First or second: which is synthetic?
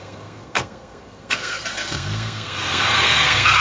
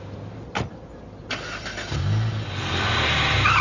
first